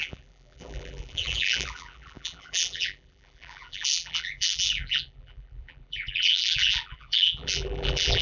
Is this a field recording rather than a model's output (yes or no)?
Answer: no